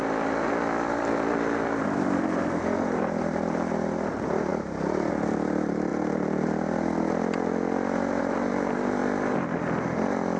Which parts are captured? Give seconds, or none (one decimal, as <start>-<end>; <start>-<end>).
0.0-10.4